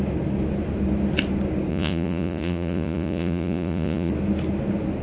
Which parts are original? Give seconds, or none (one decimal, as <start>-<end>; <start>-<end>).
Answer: 0.0-1.7; 4.1-5.0